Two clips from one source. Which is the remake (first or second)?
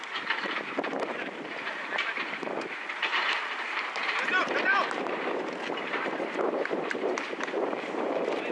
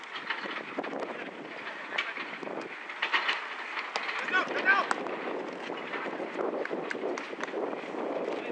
first